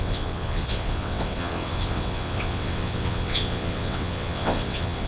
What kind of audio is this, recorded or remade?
remade